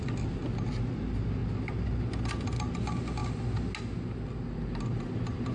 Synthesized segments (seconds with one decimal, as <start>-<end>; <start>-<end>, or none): none